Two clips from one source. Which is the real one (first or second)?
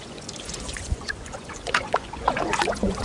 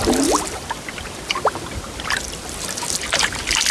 second